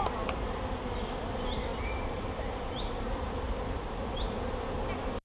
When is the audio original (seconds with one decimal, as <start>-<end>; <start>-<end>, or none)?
0.0-1.7; 4.8-5.2